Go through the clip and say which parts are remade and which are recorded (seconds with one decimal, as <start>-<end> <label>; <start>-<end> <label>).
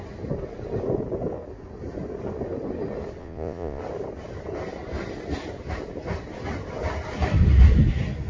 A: 0.0-3.2 recorded; 3.2-3.8 remade; 3.8-8.3 recorded